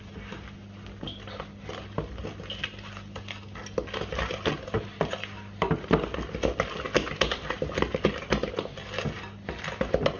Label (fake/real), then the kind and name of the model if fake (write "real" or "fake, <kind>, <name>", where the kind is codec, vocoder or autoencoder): real